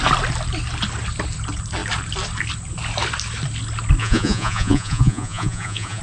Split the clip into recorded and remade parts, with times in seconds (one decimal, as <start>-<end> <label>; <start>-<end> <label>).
0.0-4.0 recorded; 4.0-6.0 remade